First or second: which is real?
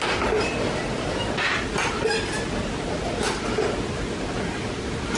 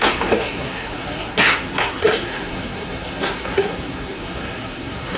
first